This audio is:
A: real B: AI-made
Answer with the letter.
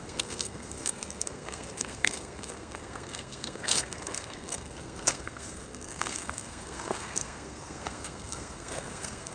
B